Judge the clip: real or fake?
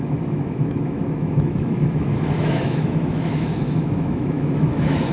fake